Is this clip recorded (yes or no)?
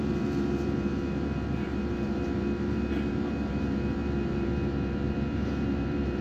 no